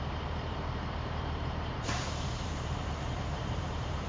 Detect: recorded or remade remade